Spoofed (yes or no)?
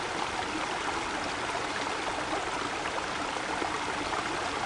no